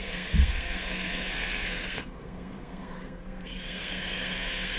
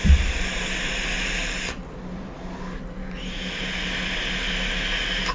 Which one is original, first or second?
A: second